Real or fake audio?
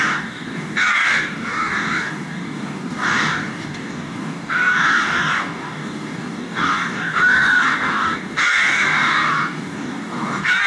fake